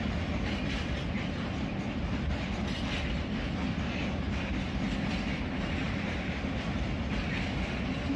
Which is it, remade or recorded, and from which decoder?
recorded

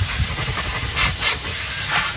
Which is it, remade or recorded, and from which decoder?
recorded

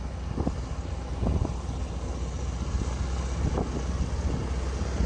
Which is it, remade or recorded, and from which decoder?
recorded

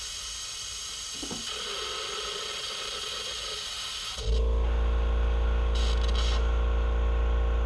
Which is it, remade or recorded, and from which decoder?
recorded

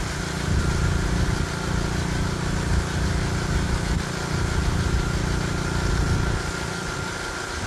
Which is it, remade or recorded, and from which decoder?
recorded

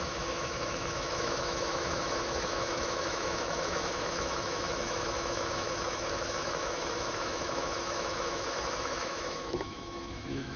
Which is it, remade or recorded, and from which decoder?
remade, autoencoder, DAC-VAE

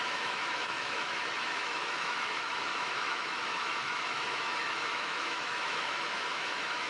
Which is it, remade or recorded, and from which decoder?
remade, autoencoder, DAC-VAE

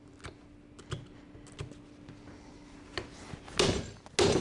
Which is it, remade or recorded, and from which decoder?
recorded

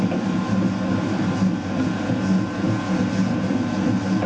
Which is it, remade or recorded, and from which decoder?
recorded